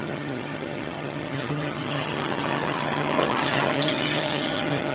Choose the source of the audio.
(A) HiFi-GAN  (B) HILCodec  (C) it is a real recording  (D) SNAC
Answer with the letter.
A